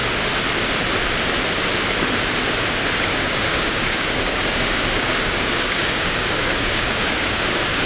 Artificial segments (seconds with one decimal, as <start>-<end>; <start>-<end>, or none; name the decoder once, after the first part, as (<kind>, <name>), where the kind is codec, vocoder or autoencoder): 3.1-7.9 (codec, DAC)